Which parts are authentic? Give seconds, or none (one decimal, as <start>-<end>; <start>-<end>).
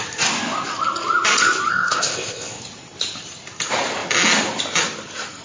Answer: 0.0-1.7; 2.6-5.4